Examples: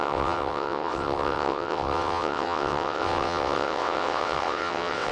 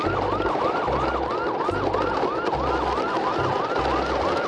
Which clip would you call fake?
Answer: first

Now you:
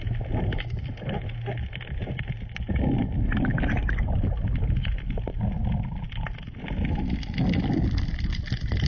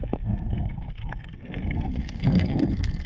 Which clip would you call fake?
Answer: second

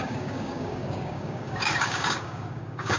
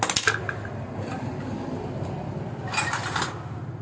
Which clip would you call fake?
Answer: first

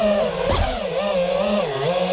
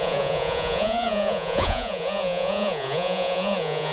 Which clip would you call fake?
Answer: second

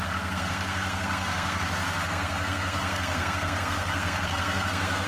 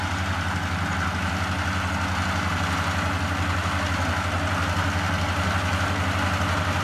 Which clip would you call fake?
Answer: first